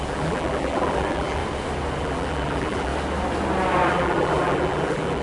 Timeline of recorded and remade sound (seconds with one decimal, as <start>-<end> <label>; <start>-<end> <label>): 0.0-1.4 remade; 1.4-2.0 recorded; 2.0-2.9 remade; 2.9-3.9 recorded; 3.9-5.2 remade